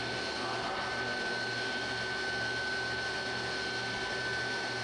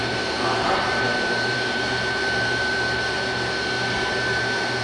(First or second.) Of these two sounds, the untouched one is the first